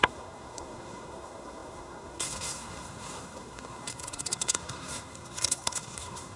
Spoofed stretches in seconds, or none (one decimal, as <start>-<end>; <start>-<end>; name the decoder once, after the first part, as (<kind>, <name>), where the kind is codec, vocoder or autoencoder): 0.0-6.4 (codec, SNAC)